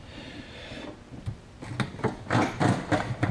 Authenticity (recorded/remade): recorded